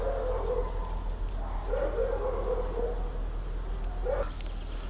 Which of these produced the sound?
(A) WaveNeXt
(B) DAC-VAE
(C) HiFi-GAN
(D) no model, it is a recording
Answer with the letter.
D